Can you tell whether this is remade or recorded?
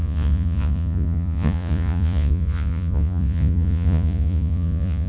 remade